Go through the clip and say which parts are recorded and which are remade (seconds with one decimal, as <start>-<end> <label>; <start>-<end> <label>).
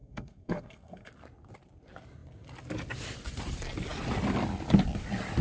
0.0-1.1 remade; 1.1-5.4 recorded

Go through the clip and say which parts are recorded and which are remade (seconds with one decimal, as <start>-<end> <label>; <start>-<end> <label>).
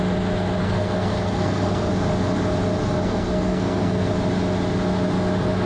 0.0-0.6 recorded; 0.6-1.9 remade; 1.9-2.8 recorded; 2.8-4.1 remade; 4.1-5.7 recorded